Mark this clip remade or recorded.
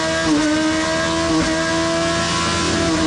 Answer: recorded